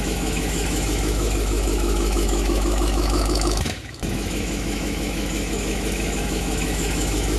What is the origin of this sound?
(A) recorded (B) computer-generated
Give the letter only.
B